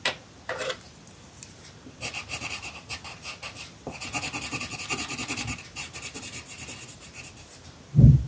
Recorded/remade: remade